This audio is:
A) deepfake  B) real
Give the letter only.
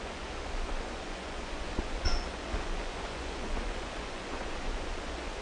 A